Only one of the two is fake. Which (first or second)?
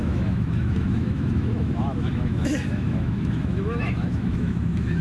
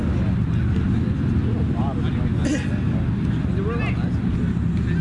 first